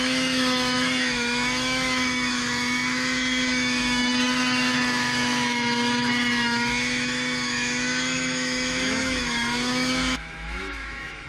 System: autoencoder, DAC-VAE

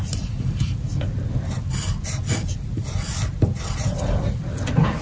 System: none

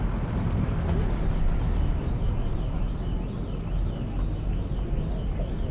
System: none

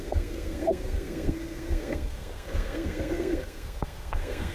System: codec, SNAC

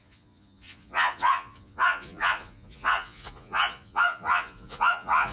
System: vocoder, Vocos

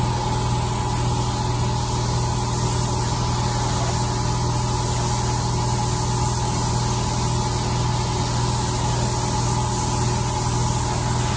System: none